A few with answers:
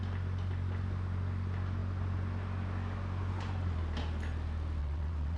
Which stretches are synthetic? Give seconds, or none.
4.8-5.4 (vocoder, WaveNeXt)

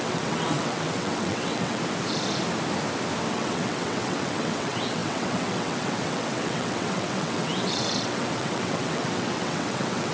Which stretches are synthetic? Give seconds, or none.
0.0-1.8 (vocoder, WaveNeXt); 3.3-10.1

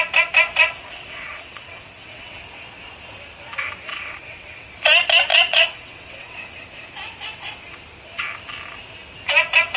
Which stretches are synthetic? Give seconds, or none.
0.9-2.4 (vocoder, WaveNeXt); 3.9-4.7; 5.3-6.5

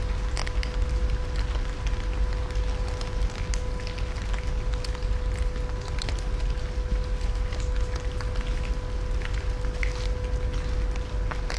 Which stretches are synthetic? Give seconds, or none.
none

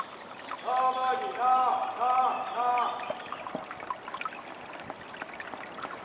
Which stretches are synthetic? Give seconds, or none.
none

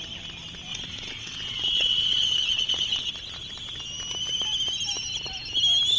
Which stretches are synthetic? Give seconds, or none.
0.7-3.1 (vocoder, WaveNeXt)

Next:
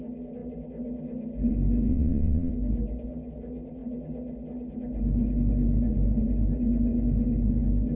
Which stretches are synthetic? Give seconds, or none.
1.9-2.5 (vocoder, WaveNeXt)